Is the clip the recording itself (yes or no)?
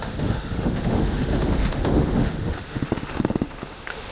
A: no